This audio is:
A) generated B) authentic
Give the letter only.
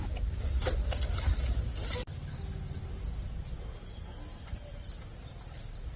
B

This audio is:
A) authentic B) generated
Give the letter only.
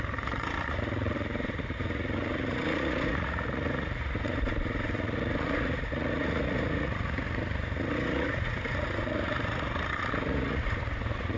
B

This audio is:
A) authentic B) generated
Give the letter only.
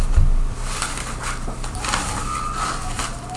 A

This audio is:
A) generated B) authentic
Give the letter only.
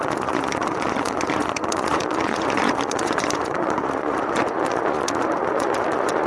A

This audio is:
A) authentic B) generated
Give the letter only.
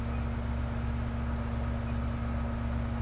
A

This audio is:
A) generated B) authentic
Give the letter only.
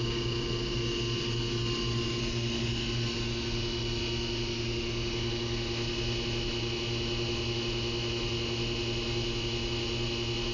B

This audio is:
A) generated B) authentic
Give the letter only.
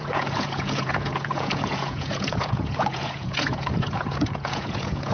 A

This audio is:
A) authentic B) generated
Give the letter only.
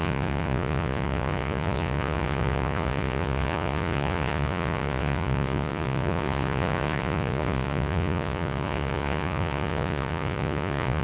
B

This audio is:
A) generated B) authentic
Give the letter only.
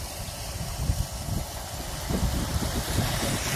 B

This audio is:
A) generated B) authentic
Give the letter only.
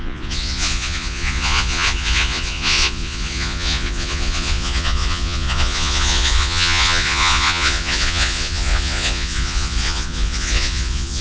A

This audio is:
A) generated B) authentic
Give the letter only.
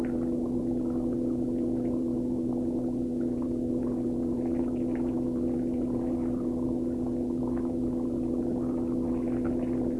B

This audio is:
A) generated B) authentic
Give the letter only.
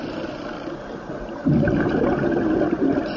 B